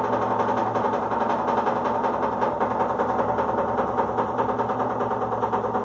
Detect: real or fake real